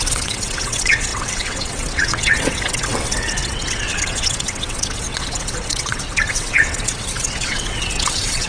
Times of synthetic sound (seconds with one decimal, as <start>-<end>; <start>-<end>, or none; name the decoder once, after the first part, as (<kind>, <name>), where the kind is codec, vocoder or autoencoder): 0.0-8.5 (vocoder, WaveNeXt)